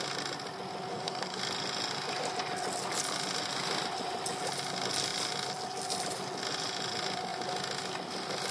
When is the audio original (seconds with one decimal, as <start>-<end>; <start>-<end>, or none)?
0.0-0.9; 1.4-8.5